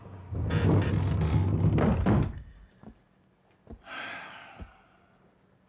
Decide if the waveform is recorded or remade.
recorded